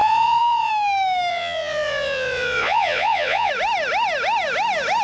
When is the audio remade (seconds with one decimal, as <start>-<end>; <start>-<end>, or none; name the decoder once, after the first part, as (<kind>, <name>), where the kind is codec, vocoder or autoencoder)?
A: 0.0-0.7 (vocoder, Vocos); 1.3-3.5